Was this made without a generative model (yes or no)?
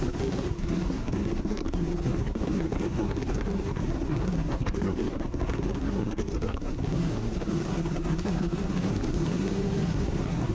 no